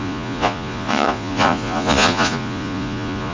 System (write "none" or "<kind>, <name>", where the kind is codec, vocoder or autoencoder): vocoder, Vocos